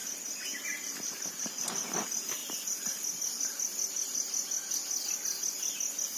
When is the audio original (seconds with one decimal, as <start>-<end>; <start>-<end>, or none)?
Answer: 0.0-6.2